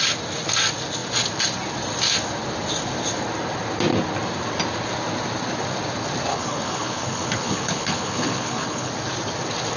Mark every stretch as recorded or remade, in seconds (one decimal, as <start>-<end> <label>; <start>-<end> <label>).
0.0-6.3 recorded; 6.3-8.9 remade; 8.9-9.8 recorded